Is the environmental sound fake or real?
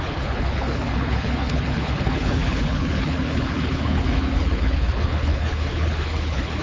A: fake